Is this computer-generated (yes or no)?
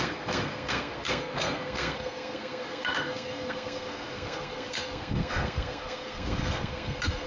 yes